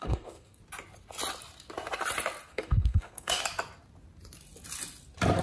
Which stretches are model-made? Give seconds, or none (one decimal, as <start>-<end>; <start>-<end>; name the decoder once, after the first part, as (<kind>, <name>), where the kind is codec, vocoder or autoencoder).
0.0-0.6 (codec, SNAC); 2.5-3.4